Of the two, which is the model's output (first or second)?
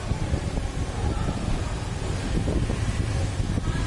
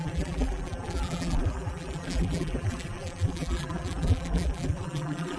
second